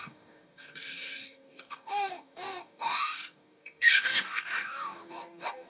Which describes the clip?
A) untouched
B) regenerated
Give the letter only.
B